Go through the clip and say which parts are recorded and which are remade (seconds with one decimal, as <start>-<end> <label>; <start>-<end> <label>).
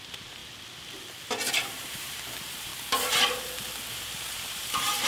0.0-0.4 remade; 0.4-1.5 recorded; 1.5-2.7 remade; 2.7-3.9 recorded; 3.9-5.1 remade